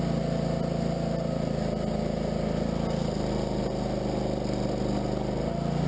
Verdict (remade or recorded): recorded